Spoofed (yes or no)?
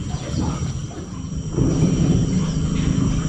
no